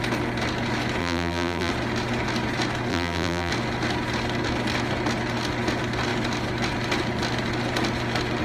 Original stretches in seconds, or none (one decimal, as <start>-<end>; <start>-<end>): 0.0-1.0; 1.7-2.9; 3.5-8.4